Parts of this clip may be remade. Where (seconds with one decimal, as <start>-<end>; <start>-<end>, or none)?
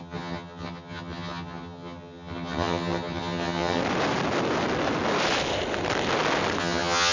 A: 0.0-3.8; 6.6-7.1